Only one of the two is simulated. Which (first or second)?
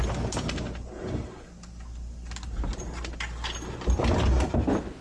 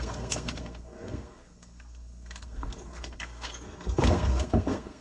second